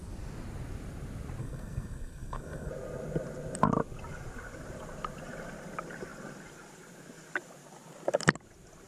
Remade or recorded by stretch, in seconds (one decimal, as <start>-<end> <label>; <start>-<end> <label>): 0.0-1.4 recorded; 1.4-2.7 remade; 2.7-8.9 recorded